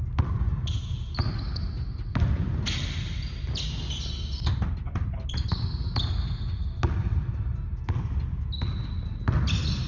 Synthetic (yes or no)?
no